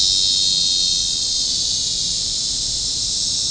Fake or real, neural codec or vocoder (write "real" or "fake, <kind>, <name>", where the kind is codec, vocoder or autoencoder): real